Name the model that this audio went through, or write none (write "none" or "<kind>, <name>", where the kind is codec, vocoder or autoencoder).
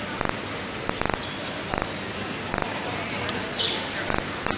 none